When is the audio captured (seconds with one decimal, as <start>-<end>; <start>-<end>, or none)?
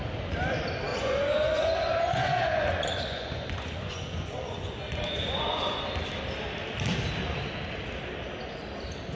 0.0-0.9; 5.8-9.2